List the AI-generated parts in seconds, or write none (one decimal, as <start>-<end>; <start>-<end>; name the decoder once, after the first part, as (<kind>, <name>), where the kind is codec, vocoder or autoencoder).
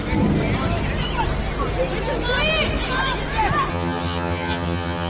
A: 3.7-5.1 (vocoder, HiFi-GAN)